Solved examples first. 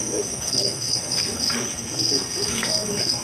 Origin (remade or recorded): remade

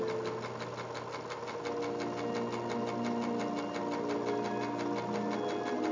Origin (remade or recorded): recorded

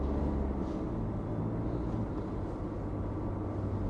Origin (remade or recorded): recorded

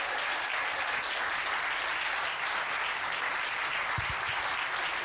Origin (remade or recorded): recorded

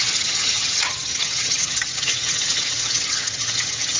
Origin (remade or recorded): remade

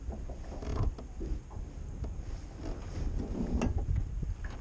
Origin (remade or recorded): recorded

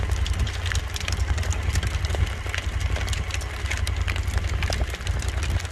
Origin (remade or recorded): recorded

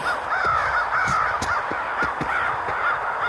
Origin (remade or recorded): recorded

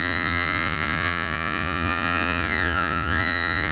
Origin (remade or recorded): remade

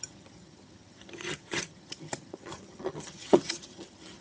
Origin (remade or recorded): remade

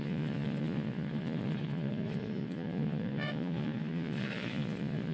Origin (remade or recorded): remade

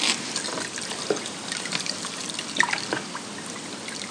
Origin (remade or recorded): recorded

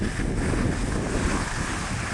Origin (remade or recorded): recorded